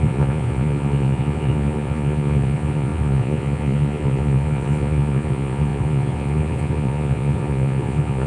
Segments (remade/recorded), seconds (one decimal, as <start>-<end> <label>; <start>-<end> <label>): 0.0-8.3 remade